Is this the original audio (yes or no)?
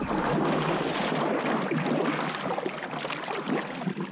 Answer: yes